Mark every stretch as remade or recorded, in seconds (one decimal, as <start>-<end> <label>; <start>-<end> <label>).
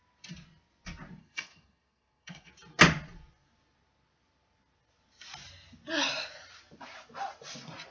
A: 0.0-1.2 recorded; 1.2-2.5 remade; 2.5-7.9 recorded